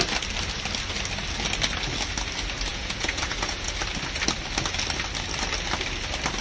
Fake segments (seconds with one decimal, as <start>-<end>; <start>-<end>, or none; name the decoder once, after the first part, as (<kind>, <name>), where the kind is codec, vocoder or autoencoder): 2.7-3.7 (vocoder, Vocos)